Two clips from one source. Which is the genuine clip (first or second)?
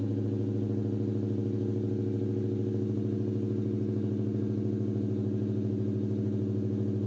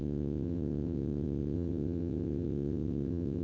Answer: first